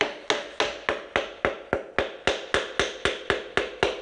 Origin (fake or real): real